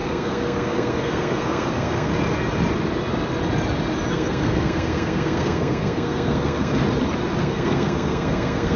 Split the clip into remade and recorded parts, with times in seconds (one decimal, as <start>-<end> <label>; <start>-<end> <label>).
0.0-2.1 remade; 2.1-4.1 recorded; 4.1-6.8 remade; 6.8-7.4 recorded; 7.4-8.8 remade